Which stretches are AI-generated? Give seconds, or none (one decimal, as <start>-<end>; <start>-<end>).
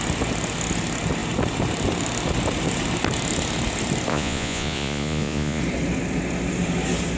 4.1-5.6